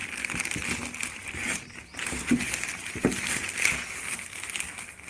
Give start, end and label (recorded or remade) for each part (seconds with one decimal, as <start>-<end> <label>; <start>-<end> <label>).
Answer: 0.0-5.1 recorded